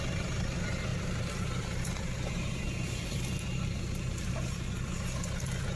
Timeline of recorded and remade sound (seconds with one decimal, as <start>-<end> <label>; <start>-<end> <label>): 0.0-0.9 recorded; 0.9-4.4 remade; 4.4-5.8 recorded